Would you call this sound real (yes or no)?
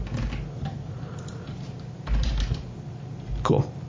yes